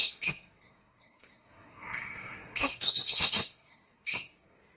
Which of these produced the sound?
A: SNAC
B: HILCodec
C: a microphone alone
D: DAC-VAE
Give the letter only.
A